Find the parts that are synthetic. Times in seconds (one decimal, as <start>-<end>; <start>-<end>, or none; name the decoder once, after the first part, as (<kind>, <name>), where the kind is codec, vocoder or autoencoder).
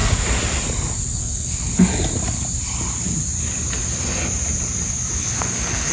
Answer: 1.2-1.7 (codec, SNAC); 5.2-5.9